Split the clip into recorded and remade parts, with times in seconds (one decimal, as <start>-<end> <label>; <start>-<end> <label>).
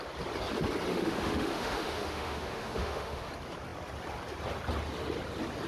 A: 0.0-0.9 recorded; 0.9-3.3 remade; 3.3-5.7 recorded